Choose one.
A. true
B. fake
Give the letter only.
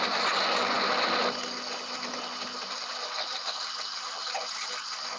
A